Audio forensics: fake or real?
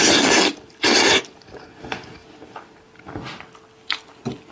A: real